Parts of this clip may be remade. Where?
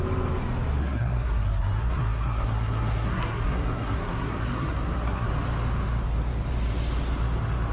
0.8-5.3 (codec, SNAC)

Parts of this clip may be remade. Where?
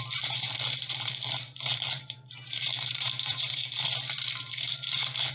0.0-5.3 (vocoder, BigVGAN v2)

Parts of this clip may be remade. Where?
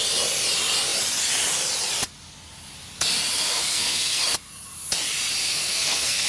3.6-4.2 (codec, SNAC); 5.4-6.3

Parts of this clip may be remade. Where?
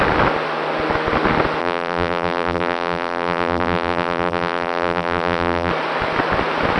1.6-5.7 (vocoder, BigVGAN v2)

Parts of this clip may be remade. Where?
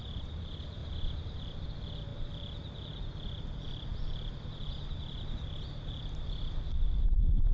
0.0-0.8 (vocoder, BigVGAN v2); 1.4-7.5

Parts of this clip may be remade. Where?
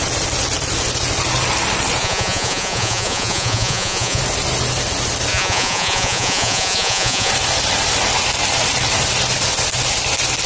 2.0-4.2 (vocoder, Vocos); 5.3-7.3